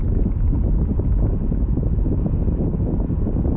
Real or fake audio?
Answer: real